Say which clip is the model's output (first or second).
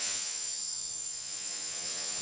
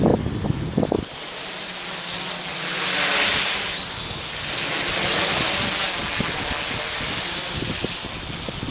first